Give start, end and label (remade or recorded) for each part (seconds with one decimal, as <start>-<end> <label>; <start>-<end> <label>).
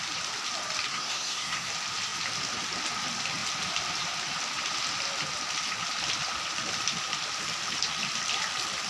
0.0-0.9 recorded; 0.9-1.7 remade; 1.7-8.9 recorded